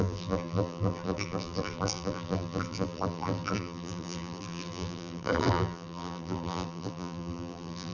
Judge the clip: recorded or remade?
remade